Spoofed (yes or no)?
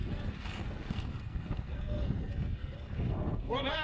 yes